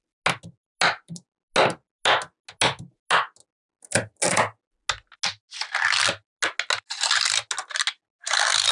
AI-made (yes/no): no